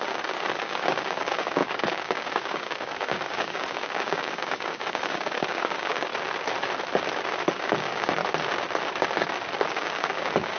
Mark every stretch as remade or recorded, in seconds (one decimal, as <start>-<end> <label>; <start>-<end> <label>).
0.0-6.1 remade; 6.1-7.6 recorded; 7.6-8.2 remade; 8.2-9.7 recorded; 9.7-10.6 remade